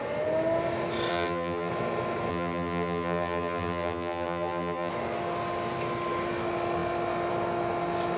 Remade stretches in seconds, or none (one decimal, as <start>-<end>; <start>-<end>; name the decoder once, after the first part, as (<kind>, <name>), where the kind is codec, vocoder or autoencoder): 1.1-1.7 (vocoder, BigVGAN v2); 2.3-4.9